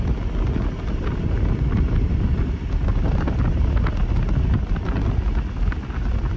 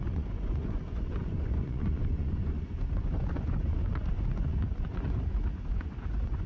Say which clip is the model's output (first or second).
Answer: second